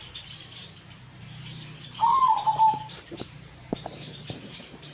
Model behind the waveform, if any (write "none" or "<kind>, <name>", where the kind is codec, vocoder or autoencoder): vocoder, BigVGAN v2